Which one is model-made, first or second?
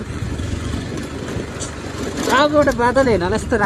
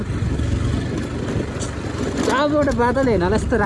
first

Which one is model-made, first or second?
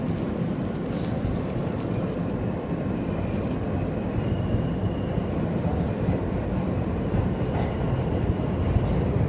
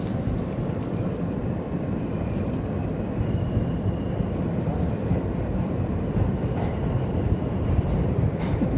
second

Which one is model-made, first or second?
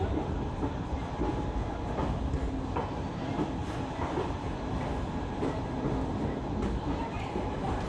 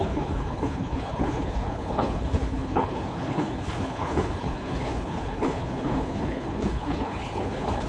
second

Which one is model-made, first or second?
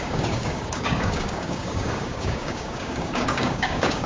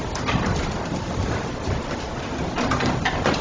first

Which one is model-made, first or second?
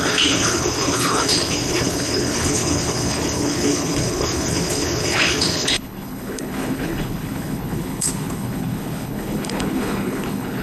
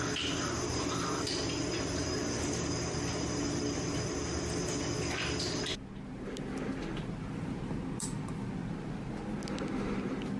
first